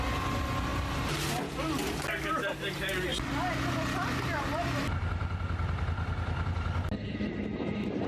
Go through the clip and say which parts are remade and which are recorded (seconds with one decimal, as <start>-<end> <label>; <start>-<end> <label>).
0.0-8.1 recorded

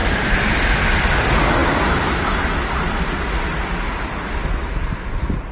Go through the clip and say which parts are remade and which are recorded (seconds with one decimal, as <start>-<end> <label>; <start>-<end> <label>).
0.0-0.8 remade; 0.8-5.5 recorded

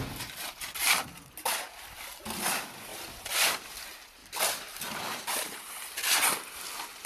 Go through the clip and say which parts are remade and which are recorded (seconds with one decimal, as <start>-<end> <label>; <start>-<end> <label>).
0.0-2.9 recorded; 2.9-3.8 remade; 3.8-4.2 recorded; 4.2-7.1 remade

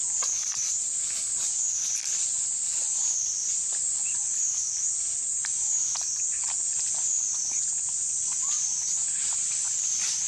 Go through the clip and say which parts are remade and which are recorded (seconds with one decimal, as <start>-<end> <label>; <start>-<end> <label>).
0.0-1.3 recorded; 1.3-4.7 remade; 4.7-5.9 recorded; 5.9-6.6 remade; 6.6-10.3 recorded